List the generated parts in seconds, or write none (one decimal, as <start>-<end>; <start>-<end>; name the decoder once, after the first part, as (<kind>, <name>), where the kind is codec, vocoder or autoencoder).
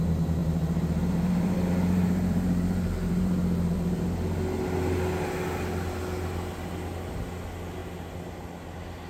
0.4-4.0 (vocoder, BigVGAN v2)